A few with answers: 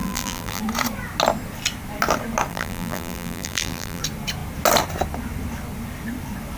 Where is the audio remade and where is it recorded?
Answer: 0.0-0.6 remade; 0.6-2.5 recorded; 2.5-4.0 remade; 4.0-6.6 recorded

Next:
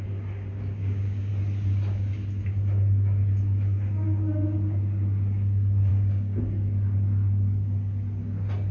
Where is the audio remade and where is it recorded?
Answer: 0.0-0.5 recorded; 0.5-1.3 remade; 1.3-5.9 recorded; 5.9-6.4 remade; 6.4-8.7 recorded

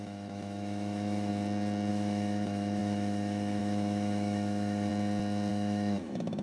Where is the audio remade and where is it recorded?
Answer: 0.0-1.3 remade; 1.3-1.9 recorded; 1.9-4.9 remade; 4.9-5.5 recorded; 5.5-6.4 remade